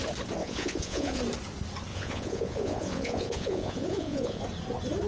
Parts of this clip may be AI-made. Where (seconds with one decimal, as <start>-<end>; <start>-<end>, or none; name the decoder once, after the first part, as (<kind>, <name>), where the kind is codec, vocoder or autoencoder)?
0.4-1.2 (vocoder, Vocos); 1.9-4.4